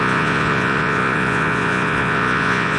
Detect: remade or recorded remade